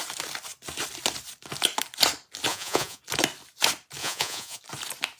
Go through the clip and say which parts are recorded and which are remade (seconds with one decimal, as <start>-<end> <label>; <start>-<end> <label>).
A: 0.0-2.5 recorded; 2.5-3.0 remade; 3.0-4.0 recorded; 4.0-4.6 remade; 4.6-5.2 recorded